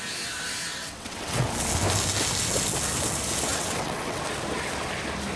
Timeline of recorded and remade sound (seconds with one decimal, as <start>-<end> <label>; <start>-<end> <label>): 0.0-0.7 recorded; 0.7-1.5 remade; 1.5-3.5 recorded; 3.5-4.2 remade; 4.2-5.4 recorded